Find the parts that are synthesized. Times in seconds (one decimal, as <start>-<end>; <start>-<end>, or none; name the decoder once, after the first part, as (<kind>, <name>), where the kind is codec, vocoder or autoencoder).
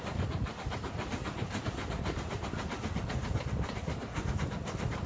none